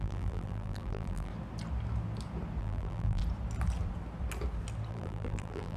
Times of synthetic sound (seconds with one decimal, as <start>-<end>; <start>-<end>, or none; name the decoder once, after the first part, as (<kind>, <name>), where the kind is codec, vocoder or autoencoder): 0.0-1.3 (vocoder, BigVGAN v2); 2.6-3.2; 4.9-5.8